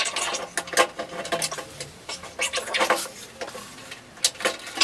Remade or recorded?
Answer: recorded